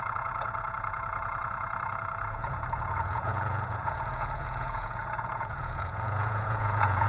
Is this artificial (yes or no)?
yes